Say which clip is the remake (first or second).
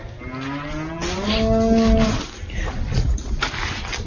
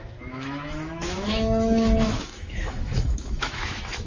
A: second